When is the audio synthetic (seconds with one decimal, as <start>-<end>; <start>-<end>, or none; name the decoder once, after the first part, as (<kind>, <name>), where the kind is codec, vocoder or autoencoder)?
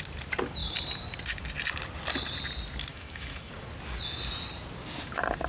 2.9-3.5 (autoencoder, DAC-VAE)